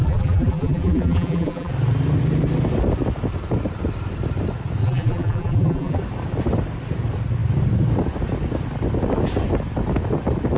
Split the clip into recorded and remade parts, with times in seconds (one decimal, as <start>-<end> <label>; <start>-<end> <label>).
0.0-1.7 remade; 1.7-4.8 recorded; 4.8-6.0 remade; 6.0-10.6 recorded